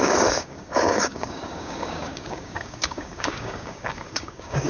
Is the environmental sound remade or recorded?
remade